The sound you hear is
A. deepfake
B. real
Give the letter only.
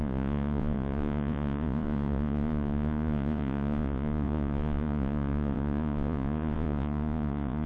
A